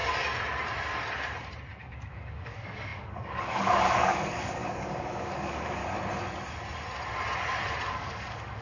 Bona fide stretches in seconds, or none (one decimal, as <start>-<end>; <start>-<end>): 0.0-1.8; 5.8-7.9